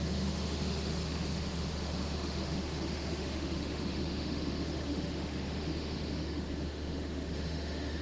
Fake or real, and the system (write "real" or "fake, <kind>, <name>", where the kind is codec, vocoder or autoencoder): fake, autoencoder, DAC-VAE